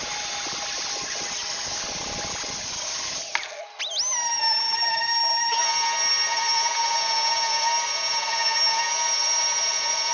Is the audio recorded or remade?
recorded